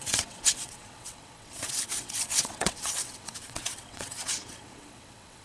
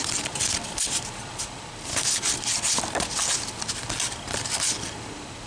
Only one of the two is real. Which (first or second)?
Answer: second